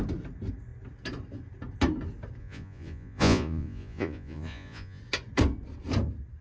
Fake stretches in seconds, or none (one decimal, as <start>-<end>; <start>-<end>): 2.4-5.0